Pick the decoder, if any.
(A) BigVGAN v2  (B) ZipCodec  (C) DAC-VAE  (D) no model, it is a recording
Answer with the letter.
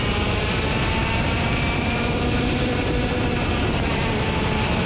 A